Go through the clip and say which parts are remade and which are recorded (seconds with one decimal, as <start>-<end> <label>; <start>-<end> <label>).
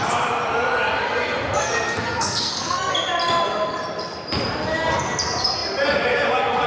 0.0-1.6 recorded; 1.6-2.9 remade; 2.9-6.7 recorded